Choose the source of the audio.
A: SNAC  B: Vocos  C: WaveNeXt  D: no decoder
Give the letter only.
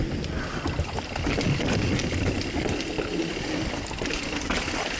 D